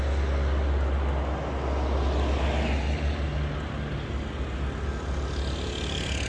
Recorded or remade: recorded